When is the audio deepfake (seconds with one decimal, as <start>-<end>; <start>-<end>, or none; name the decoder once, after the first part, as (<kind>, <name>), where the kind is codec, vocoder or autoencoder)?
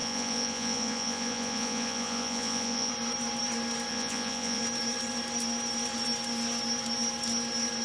0.0-2.9 (vocoder, Vocos); 3.9-4.6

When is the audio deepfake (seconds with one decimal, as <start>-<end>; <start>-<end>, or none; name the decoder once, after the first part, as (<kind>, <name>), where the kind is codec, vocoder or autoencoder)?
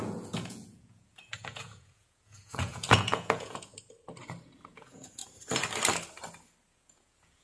0.0-3.7 (vocoder, Vocos); 4.7-5.2; 6.7-7.4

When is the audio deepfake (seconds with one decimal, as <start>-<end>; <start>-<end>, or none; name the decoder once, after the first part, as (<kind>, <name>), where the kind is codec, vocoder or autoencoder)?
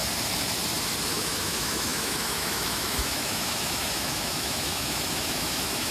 1.1-5.9 (autoencoder, DAC-VAE)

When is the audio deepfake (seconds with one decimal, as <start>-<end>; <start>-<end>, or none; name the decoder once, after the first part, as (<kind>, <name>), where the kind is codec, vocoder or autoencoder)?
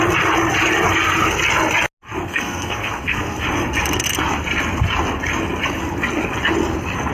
2.2-3.4 (codec, SNAC)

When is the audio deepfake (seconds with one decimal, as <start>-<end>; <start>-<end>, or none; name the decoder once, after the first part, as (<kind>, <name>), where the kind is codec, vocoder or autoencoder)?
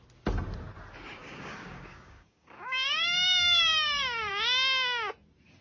1.2-4.3 (codec, DAC)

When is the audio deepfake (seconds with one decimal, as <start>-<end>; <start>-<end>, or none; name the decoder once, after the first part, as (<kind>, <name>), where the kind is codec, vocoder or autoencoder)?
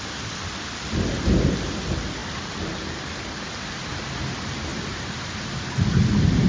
none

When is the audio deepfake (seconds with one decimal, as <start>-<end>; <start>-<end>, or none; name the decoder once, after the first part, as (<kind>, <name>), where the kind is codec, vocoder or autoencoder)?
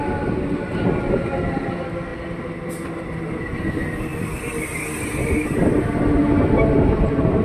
none